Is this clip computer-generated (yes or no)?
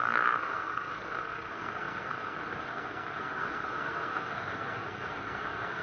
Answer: yes